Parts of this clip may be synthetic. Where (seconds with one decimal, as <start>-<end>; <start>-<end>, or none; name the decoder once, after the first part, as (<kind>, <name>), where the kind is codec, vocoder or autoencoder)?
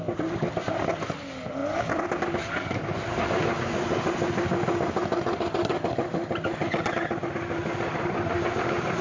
none